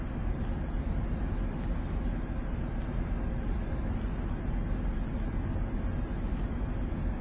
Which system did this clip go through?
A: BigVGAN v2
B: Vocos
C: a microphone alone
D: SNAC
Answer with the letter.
C